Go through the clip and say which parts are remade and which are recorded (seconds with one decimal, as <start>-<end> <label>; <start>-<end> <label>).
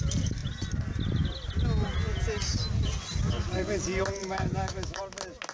0.0-4.2 recorded; 4.2-5.0 remade; 5.0-5.5 recorded